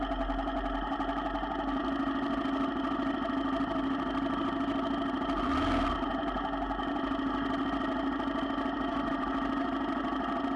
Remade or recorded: recorded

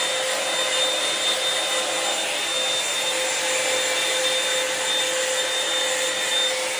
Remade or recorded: recorded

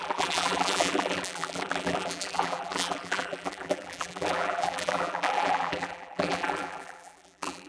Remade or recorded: remade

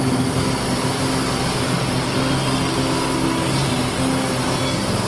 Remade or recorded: recorded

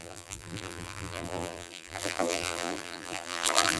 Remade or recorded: remade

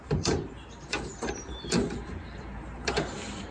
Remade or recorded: remade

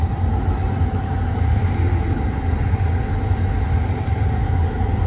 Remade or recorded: recorded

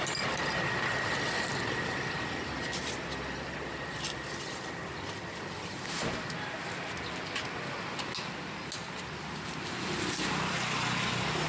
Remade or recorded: recorded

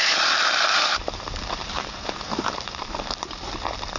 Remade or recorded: remade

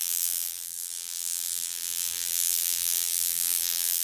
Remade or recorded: remade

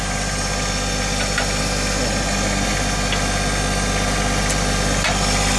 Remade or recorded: recorded